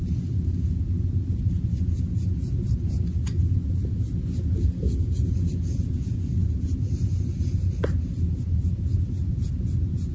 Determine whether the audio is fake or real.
real